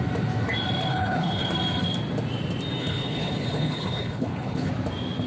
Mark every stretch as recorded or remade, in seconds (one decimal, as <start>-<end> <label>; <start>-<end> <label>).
0.0-0.9 recorded; 0.9-1.5 remade; 1.5-2.8 recorded; 2.8-4.7 remade; 4.7-5.3 recorded